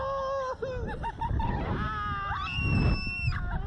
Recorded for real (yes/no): yes